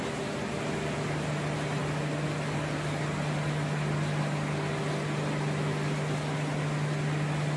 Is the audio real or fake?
real